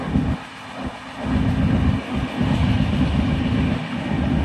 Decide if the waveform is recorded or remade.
recorded